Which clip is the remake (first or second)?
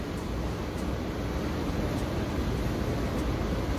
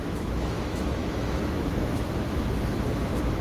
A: second